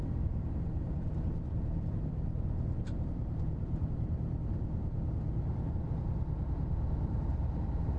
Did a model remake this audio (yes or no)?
yes